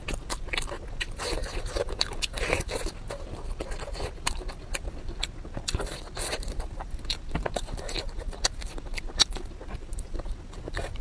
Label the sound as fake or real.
fake